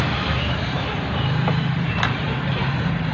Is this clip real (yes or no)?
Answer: no